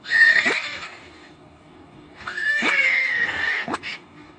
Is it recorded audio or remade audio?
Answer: remade